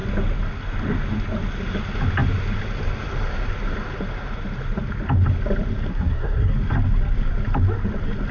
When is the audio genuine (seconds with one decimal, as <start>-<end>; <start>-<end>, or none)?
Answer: 0.0-5.9; 6.5-8.3